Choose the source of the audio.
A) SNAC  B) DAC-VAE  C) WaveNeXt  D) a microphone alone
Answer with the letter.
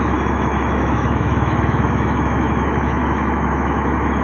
B